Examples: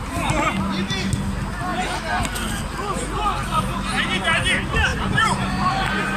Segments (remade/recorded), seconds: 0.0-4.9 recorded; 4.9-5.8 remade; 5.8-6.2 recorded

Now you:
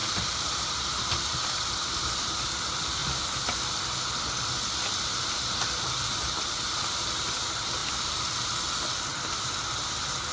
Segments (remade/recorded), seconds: 0.0-1.7 remade; 1.7-3.0 recorded; 3.0-3.8 remade; 3.8-7.8 recorded; 7.8-8.5 remade; 8.5-10.3 recorded

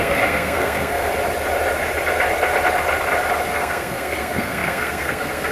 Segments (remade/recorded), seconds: 0.0-1.1 remade; 1.1-3.5 recorded; 3.5-5.5 remade